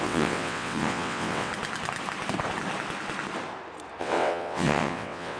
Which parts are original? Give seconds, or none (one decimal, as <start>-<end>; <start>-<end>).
1.5-4.0